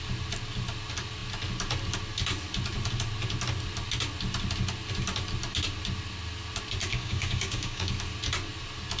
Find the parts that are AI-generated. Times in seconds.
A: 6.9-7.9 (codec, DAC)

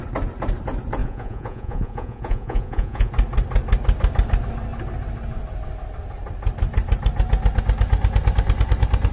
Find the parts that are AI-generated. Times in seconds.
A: 1.0-3.1 (vocoder, Vocos)

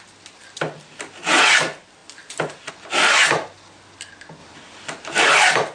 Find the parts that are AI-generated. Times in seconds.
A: none

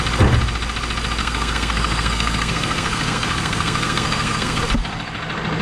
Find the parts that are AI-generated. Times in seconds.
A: 1.2-4.6 (codec, SNAC)

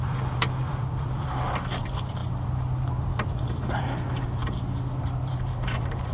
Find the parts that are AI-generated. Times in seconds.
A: 0.0-4.4 (vocoder, BigVGAN v2); 5.0-6.1

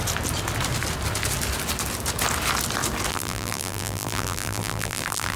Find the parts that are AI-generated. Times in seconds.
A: 3.1-5.4 (vocoder, BigVGAN v2)

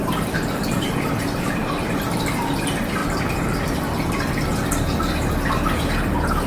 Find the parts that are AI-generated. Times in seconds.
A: 0.0-2.6 (vocoder, BigVGAN v2)

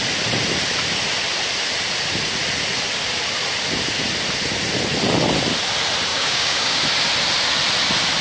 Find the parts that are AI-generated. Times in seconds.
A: 6.1-6.8 (codec, DAC)